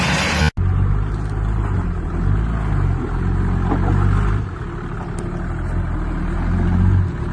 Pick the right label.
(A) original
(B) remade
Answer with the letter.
A